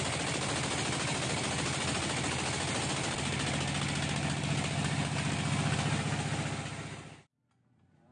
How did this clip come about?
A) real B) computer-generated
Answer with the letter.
A